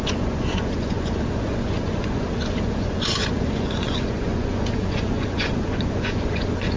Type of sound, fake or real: fake